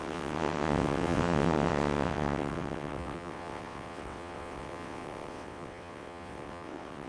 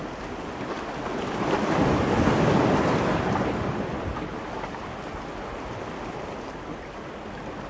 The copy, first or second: first